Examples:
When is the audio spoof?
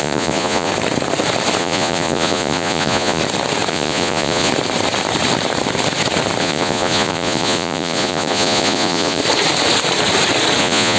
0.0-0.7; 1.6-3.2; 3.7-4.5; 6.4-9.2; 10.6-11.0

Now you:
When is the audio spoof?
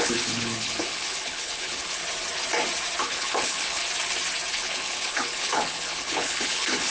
0.0-2.0; 3.0-3.8; 4.5-6.9